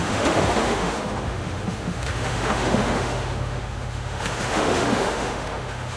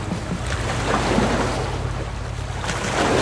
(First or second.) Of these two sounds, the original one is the second